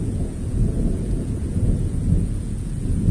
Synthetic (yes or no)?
yes